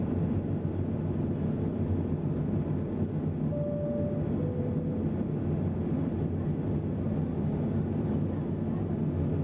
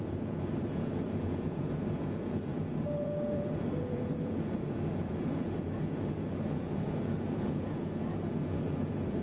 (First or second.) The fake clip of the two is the second